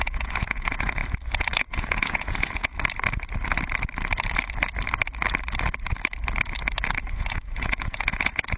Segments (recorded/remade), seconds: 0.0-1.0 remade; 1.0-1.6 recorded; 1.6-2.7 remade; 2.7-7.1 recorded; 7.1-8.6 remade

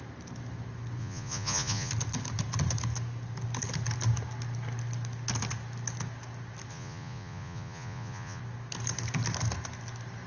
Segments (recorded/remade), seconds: 0.0-1.0 recorded; 1.0-1.9 remade; 1.9-6.7 recorded; 6.7-8.4 remade; 8.4-10.3 recorded

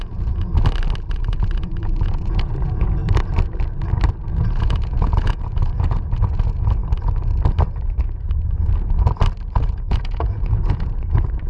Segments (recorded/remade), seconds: 0.0-0.5 remade; 0.5-1.1 recorded; 1.1-3.0 remade; 3.0-4.3 recorded; 4.3-6.8 remade; 6.8-9.6 recorded; 9.6-11.5 remade

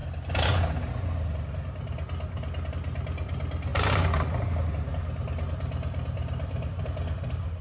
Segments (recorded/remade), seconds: 0.0-7.6 recorded

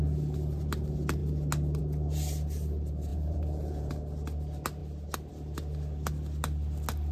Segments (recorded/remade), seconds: 0.0-3.1 recorded; 3.1-3.9 remade; 3.9-7.1 recorded